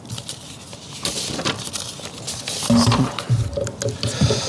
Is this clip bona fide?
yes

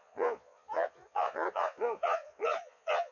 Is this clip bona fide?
no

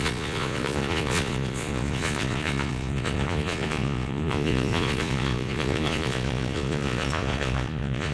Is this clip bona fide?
no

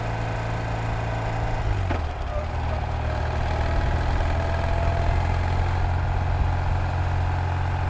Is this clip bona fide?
yes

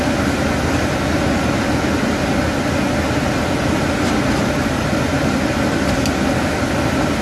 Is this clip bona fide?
yes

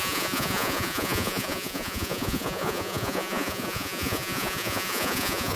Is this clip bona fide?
no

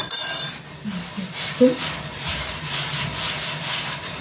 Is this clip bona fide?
yes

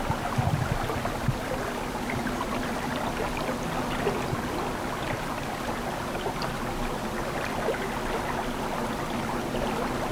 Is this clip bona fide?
yes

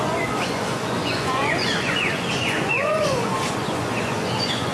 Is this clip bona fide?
no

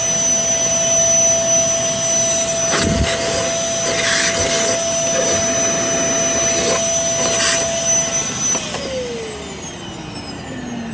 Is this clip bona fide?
yes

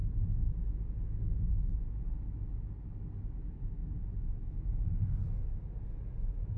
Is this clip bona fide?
yes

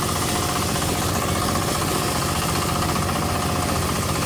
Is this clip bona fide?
yes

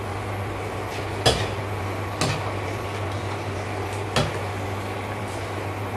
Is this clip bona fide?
yes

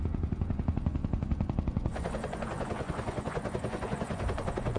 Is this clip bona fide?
no